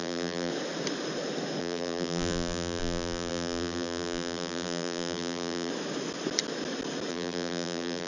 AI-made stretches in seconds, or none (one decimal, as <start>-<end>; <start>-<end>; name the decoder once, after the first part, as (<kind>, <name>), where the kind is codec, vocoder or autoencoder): 0.0-0.5 (vocoder, BigVGAN v2); 1.6-5.7; 7.1-8.1